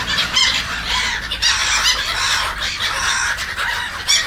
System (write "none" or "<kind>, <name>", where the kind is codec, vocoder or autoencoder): vocoder, BigVGAN v2